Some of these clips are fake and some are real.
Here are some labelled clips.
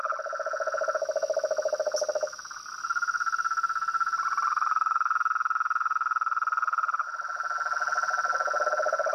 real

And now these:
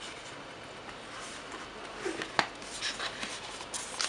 real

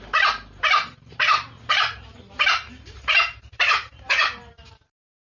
fake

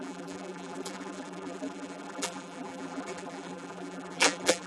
fake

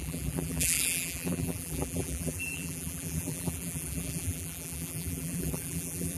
fake